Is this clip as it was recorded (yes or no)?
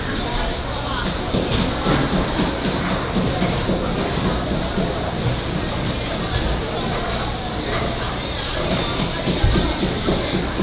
yes